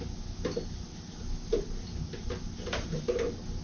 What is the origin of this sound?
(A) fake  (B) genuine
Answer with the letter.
B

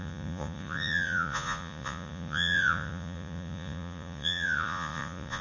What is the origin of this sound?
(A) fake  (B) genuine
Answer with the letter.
A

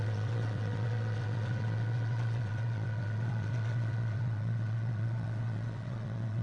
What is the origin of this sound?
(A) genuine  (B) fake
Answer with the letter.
B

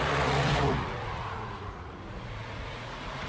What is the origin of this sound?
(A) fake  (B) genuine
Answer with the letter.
A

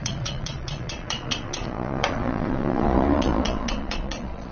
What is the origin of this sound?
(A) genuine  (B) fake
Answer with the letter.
B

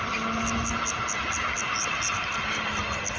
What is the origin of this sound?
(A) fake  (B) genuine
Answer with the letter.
B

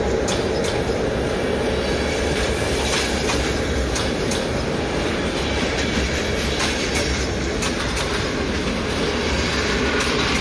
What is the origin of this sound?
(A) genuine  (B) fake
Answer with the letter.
A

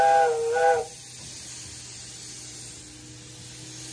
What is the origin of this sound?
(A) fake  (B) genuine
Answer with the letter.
B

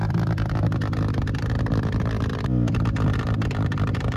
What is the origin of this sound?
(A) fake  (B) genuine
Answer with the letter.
B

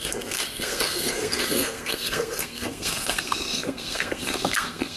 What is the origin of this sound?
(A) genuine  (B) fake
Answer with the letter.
B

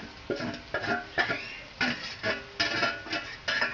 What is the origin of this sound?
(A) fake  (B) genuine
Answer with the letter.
B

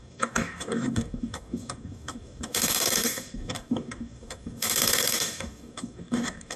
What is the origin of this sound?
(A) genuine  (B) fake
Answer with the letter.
B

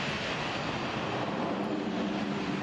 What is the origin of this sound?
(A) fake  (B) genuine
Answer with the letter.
B